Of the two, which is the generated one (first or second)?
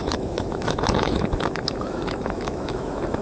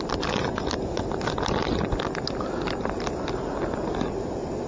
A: first